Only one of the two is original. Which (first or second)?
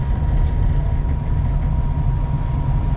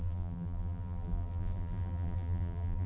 first